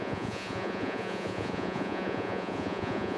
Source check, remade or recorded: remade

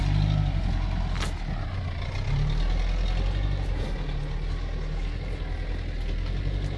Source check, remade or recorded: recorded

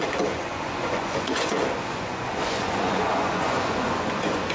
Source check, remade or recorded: remade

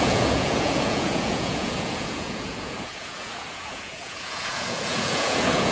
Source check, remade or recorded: remade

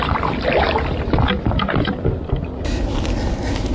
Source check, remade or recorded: recorded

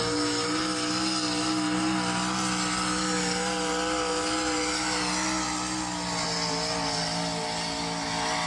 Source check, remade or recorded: recorded